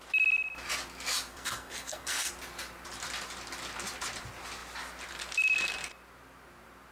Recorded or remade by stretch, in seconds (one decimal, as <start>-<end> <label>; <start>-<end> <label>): 0.0-1.3 recorded; 1.3-2.3 remade; 2.3-6.9 recorded